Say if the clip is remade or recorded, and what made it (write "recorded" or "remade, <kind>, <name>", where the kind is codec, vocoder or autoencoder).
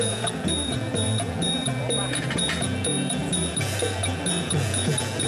remade, vocoder, Vocos